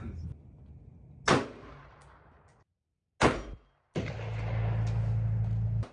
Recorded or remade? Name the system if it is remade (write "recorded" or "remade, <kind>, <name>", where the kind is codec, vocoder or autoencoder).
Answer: recorded